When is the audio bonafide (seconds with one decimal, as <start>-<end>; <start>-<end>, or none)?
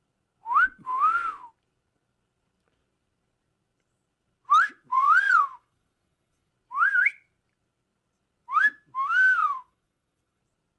0.0-4.9; 6.5-9.4; 10.4-10.8